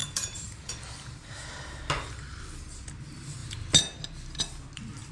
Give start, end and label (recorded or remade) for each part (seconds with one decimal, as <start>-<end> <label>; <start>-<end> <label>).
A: 0.0-0.7 remade; 0.7-5.1 recorded